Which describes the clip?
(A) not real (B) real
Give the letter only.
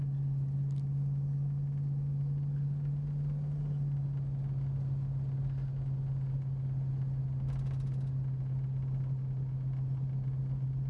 B